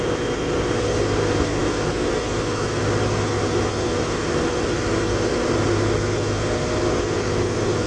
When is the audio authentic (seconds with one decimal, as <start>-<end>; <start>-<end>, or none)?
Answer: 0.0-7.9